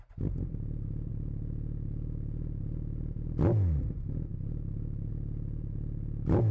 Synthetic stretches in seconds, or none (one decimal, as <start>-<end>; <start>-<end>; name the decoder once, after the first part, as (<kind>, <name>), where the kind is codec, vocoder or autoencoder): none